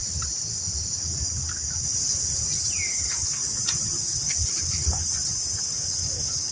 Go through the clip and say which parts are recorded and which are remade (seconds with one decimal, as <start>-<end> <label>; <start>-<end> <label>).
0.0-2.9 recorded; 2.9-3.4 remade; 3.4-4.0 recorded; 4.0-5.1 remade; 5.1-5.6 recorded; 5.6-6.5 remade